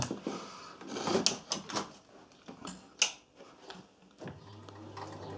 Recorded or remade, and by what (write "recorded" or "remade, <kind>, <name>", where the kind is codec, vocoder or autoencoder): recorded